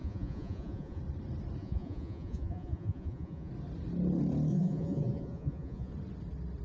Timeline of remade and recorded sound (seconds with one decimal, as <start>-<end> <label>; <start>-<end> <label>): 0.0-1.0 remade; 1.0-1.6 recorded; 1.6-3.5 remade; 3.5-4.5 recorded; 4.5-5.9 remade; 5.9-6.6 recorded